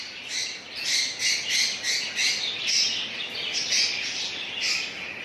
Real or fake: real